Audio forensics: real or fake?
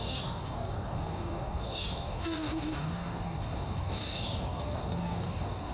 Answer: fake